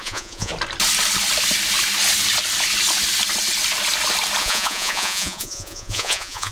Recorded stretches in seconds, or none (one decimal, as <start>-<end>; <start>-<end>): 0.5-4.4